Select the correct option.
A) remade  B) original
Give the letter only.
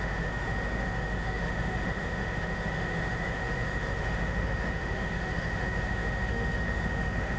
A